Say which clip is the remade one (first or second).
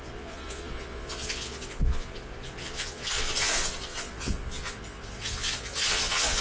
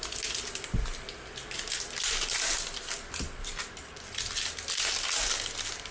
first